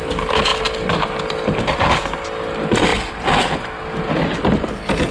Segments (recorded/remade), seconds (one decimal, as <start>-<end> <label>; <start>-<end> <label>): 0.0-5.1 recorded